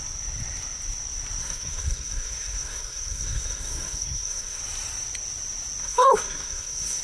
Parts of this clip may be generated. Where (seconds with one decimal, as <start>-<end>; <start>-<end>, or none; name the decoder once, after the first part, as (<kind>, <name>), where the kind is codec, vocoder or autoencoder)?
1.4-4.6 (codec, SNAC); 5.8-7.0